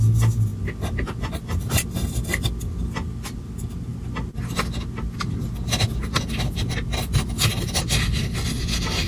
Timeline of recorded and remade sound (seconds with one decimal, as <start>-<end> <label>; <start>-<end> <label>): 0.0-9.1 recorded